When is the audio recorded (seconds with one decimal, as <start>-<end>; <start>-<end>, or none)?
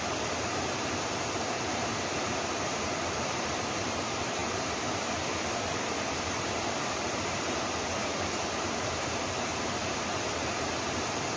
none